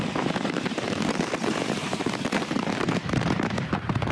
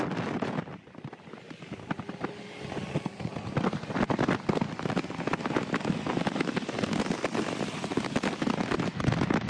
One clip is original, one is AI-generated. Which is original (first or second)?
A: second